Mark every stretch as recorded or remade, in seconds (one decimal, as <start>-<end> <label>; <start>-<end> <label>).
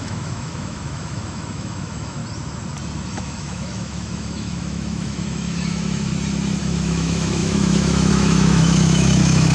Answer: 0.0-2.2 remade; 2.2-3.1 recorded; 3.1-6.1 remade; 6.1-6.6 recorded; 6.6-9.5 remade